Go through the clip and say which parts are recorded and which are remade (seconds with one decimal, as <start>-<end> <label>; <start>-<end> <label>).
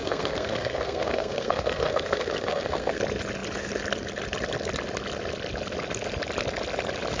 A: 0.0-3.0 remade; 3.0-7.2 recorded